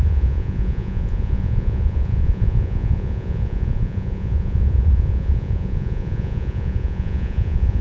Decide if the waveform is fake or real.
fake